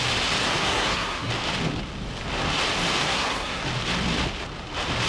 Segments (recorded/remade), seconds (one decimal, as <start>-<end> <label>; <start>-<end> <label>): 0.0-0.6 recorded; 0.6-1.3 remade; 1.3-3.1 recorded; 3.1-3.6 remade; 3.6-5.1 recorded